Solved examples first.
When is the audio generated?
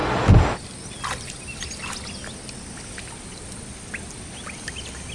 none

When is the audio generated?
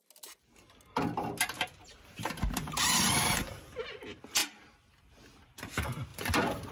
1.8-3.6; 4.4-4.9; 6.1-6.7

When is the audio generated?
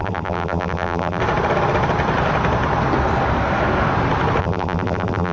0.0-1.2; 4.4-5.3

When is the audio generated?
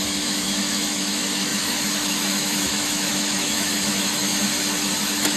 0.0-4.3; 5.0-5.4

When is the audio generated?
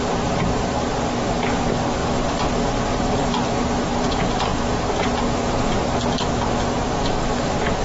2.0-3.2; 4.5-5.2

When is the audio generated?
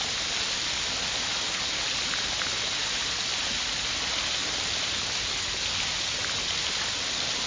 none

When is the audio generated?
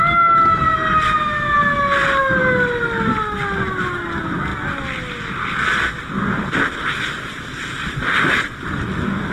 none